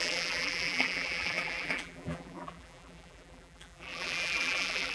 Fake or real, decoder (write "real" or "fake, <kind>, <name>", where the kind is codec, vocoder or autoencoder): fake, vocoder, BigVGAN v2